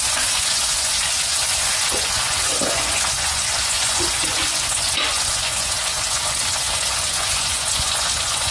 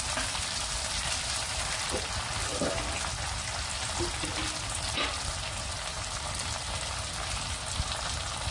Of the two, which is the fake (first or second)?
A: first